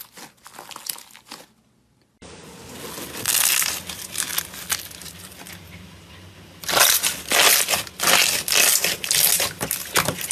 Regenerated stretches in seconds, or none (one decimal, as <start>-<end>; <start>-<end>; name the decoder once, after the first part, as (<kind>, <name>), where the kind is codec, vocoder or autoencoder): none